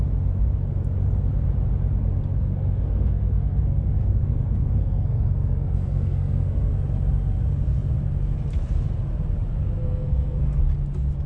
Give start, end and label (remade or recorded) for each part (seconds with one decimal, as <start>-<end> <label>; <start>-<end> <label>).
0.0-2.4 recorded; 2.4-6.7 remade; 6.7-9.8 recorded; 9.8-10.6 remade; 10.6-11.3 recorded